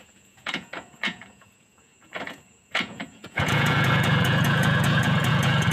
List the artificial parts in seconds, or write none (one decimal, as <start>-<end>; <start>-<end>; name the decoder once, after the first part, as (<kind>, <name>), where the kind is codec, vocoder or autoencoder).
0.0-5.7 (vocoder, Vocos)

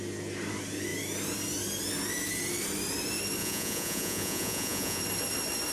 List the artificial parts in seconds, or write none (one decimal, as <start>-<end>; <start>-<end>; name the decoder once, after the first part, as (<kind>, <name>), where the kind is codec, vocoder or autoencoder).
3.4-5.0 (vocoder, Vocos)

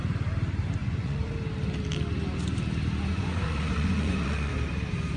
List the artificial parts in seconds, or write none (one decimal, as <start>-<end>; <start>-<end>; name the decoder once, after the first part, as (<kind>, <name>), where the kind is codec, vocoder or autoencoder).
0.8-1.3 (vocoder, Vocos); 3.1-4.5